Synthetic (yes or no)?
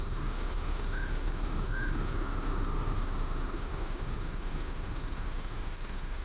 yes